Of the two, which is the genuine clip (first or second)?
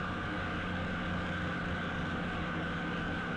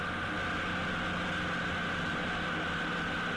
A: second